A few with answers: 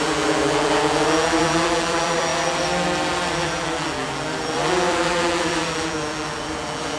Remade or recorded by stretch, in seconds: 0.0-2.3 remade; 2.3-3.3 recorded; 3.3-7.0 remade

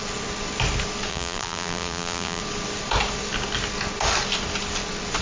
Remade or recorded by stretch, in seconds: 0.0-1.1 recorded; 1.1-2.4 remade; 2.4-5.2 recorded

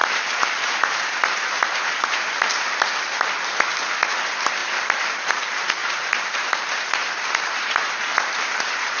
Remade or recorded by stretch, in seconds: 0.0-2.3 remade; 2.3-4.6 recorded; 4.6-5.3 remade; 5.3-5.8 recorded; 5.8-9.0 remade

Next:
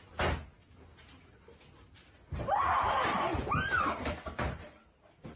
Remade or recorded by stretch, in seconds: 0.0-2.7 recorded; 2.7-5.0 remade; 5.0-5.4 recorded